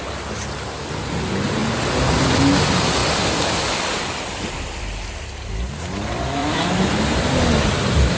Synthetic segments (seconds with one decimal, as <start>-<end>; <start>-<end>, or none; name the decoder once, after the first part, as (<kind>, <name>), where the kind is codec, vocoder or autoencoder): 1.6-2.4 (vocoder, BigVGAN v2); 3.0-4.8; 6.4-7.3